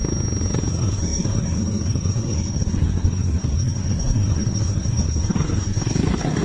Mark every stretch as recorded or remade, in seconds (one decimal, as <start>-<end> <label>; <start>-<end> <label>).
0.0-0.7 recorded; 0.7-6.4 remade